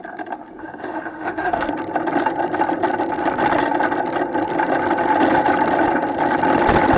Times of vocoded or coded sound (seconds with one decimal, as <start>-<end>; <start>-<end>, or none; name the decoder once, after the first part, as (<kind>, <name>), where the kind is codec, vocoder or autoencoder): 0.6-1.7 (autoencoder, DAC-VAE)